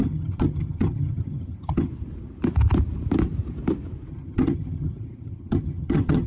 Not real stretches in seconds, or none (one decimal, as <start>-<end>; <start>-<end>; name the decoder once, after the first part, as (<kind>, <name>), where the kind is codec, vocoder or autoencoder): 0.0-1.9 (vocoder, HiFi-GAN); 4.1-6.3